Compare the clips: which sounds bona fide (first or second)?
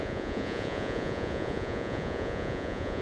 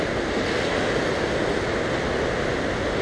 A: second